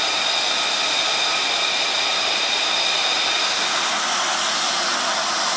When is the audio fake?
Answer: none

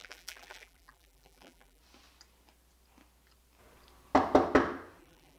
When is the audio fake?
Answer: 0.0-1.8 (vocoder, BigVGAN v2); 5.0-5.4

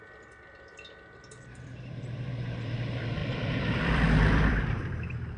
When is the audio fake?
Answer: 0.0-5.4 (vocoder, BigVGAN v2)